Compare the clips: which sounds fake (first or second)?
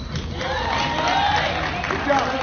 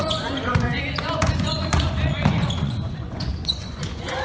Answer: second